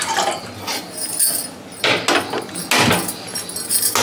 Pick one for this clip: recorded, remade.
recorded